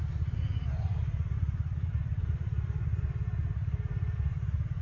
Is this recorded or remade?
recorded